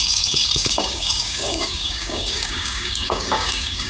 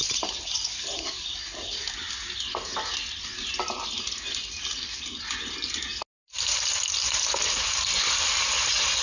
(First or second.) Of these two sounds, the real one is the second